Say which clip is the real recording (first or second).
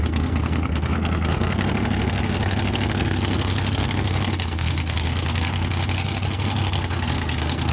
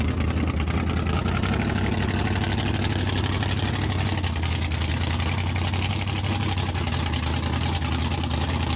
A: second